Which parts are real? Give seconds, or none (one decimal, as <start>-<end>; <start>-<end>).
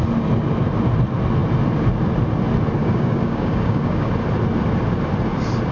0.0-2.8; 4.1-5.7